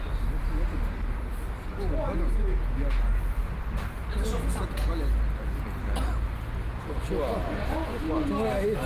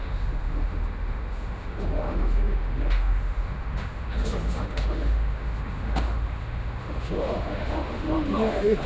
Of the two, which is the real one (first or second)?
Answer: first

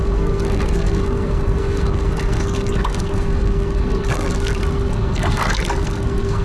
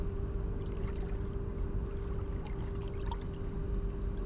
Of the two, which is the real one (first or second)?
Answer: second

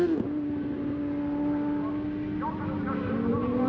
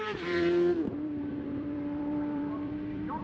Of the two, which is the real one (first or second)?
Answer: first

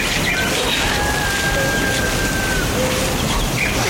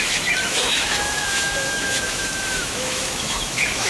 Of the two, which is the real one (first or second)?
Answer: first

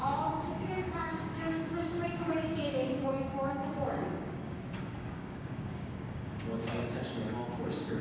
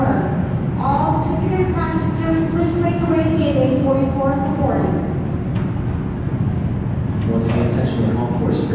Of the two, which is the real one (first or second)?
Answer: second